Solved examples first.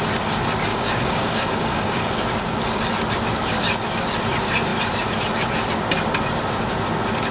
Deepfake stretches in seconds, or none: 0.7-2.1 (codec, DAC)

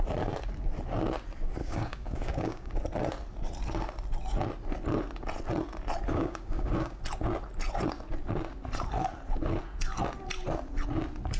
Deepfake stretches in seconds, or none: 1.6-2.7 (codec, DAC); 6.1-7.0